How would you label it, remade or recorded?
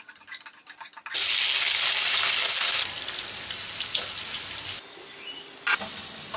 recorded